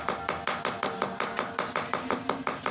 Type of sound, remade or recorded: recorded